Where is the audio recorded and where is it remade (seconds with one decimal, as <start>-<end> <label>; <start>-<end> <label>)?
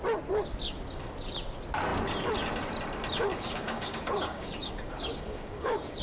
0.0-3.3 recorded; 3.3-6.0 remade